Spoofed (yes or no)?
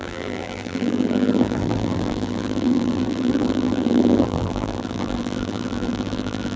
yes